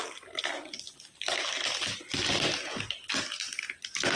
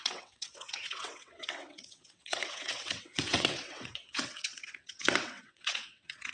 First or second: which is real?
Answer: first